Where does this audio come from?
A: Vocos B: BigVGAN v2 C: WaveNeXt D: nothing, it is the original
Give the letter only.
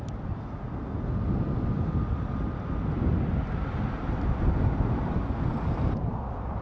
D